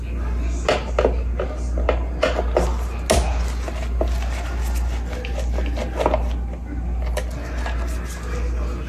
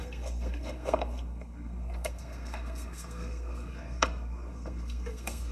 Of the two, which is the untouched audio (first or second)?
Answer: first